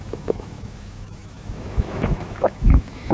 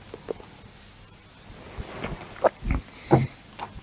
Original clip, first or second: second